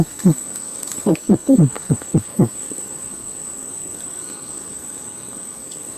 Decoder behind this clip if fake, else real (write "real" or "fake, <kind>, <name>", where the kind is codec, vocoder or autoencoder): fake, codec, SNAC